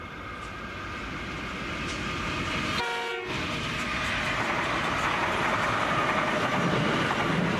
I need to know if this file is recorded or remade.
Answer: recorded